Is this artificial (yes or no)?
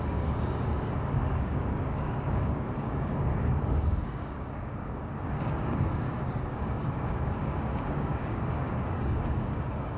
yes